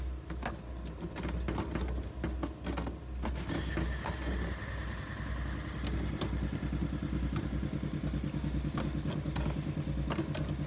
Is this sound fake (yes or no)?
no